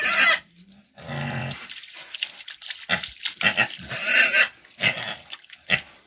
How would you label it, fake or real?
real